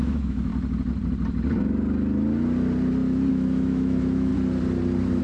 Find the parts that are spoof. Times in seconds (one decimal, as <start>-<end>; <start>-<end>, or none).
0.0-0.5; 3.3-4.3